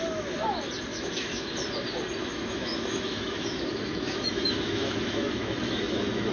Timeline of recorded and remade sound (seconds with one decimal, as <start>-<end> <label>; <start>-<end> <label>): 0.0-0.9 recorded; 0.9-1.5 remade; 1.5-2.2 recorded; 2.2-6.3 remade